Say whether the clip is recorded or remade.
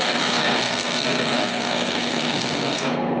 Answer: remade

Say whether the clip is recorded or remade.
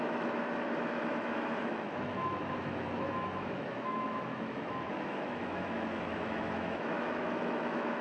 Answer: remade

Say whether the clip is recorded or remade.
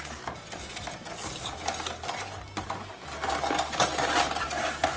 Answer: recorded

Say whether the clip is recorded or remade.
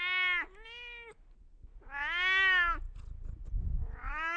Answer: recorded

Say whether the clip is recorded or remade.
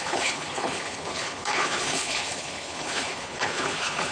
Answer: remade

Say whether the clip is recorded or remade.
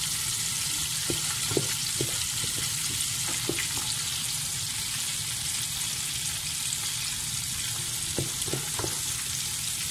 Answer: recorded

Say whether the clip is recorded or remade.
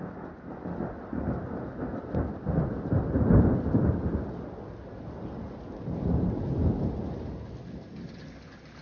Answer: recorded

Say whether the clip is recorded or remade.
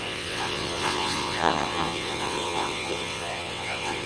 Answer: remade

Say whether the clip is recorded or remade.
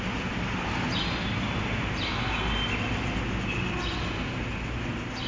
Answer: recorded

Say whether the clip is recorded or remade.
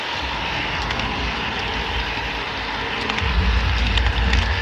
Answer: recorded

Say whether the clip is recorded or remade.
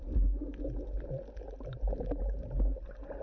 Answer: recorded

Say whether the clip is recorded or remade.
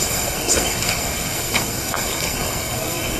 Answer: remade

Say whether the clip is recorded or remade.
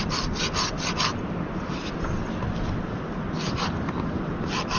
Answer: recorded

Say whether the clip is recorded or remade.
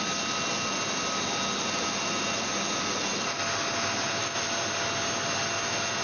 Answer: recorded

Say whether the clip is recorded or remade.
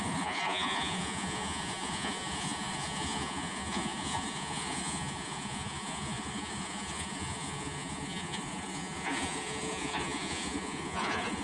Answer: remade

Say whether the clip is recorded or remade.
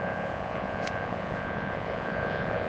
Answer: remade